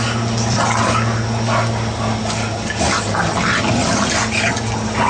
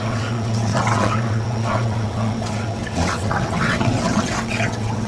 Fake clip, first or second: second